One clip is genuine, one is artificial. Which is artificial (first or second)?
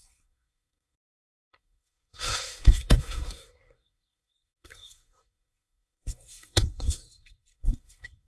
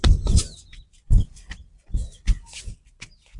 first